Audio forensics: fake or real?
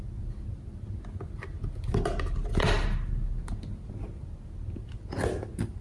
real